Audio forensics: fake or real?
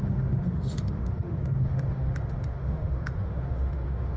fake